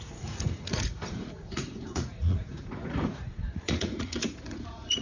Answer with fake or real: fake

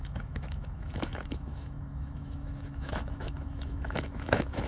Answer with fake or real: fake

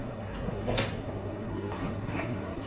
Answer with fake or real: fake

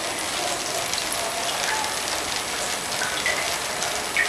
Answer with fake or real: real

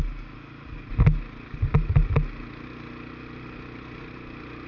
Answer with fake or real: real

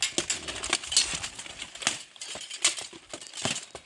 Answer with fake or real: real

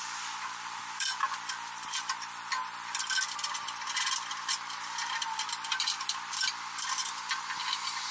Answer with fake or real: fake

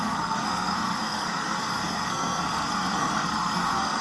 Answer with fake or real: fake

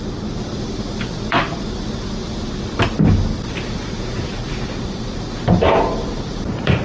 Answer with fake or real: fake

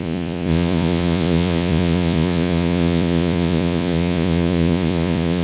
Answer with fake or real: fake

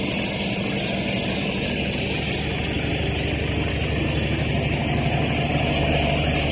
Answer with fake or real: real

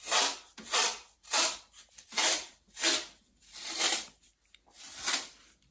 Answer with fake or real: fake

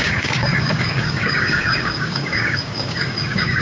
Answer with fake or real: fake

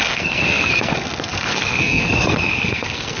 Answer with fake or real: fake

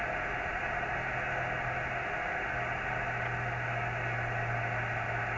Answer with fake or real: real